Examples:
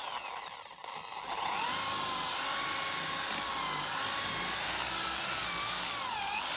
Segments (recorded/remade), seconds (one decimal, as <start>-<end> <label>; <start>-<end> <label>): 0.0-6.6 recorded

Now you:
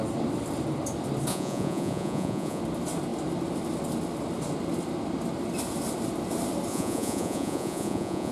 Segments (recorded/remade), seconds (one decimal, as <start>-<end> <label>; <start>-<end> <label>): 0.0-1.3 recorded; 1.3-2.6 remade; 2.6-6.7 recorded; 6.7-8.3 remade

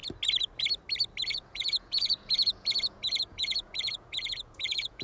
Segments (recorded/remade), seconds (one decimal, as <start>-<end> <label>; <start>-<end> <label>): 0.0-1.3 recorded; 1.3-5.0 remade